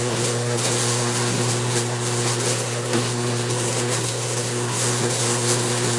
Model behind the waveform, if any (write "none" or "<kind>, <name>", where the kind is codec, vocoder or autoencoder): codec, SNAC